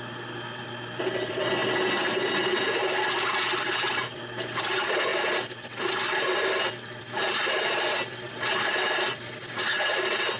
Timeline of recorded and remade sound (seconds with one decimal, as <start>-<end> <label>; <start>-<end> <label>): 0.0-10.4 recorded

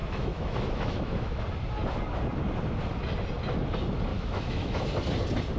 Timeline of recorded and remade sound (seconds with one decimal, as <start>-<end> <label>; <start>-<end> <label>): 0.0-1.4 remade; 1.4-4.1 recorded; 4.1-4.8 remade; 4.8-5.6 recorded

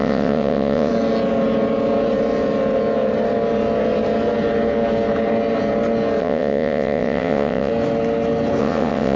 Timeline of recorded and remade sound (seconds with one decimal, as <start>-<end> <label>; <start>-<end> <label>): 0.0-0.9 remade; 0.9-6.2 recorded; 6.2-7.7 remade; 7.7-8.6 recorded; 8.6-9.2 remade

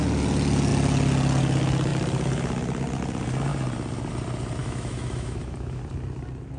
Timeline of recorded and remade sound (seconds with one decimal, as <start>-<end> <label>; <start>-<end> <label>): 0.0-4.6 recorded; 4.6-5.8 remade; 5.8-6.6 recorded

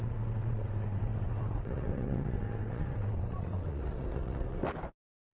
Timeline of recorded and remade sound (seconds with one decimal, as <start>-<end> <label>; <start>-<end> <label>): 0.0-4.6 remade; 4.6-5.3 recorded

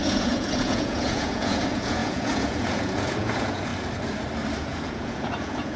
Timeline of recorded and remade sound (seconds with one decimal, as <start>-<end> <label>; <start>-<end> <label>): 0.0-3.7 remade; 3.7-4.6 recorded; 4.6-5.8 remade